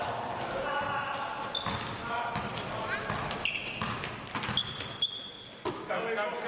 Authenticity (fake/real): real